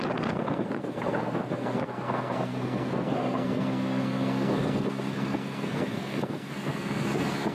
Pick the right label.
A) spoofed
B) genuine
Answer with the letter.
A